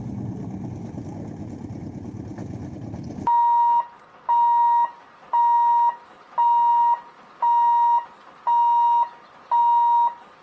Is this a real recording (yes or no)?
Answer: yes